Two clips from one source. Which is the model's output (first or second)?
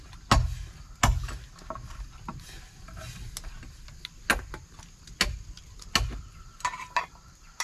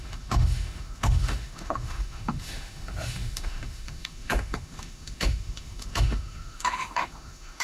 second